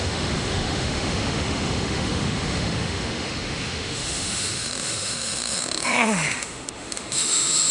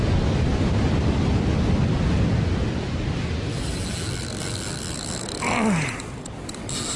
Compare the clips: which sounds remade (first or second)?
first